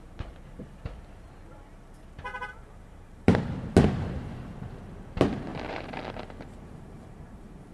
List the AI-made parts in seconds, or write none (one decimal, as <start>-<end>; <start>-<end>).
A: 2.3-3.4; 5.5-7.7